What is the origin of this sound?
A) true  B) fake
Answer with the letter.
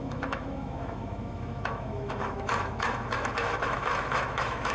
B